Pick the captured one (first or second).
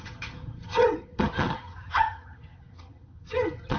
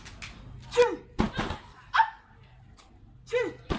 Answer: second